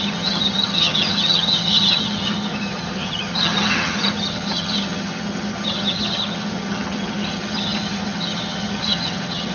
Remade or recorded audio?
remade